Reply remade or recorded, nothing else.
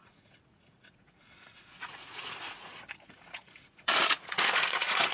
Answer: remade